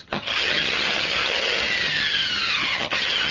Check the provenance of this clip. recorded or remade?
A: remade